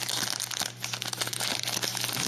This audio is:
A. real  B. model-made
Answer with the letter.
A